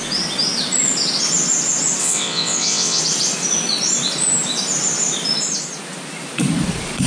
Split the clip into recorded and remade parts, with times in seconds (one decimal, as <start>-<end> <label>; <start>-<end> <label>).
0.0-2.0 recorded; 2.0-3.0 remade; 3.0-7.1 recorded